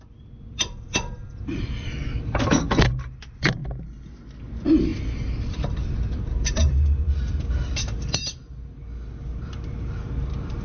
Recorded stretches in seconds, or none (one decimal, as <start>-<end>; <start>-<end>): 2.0-2.9; 3.6-4.4; 8.8-9.4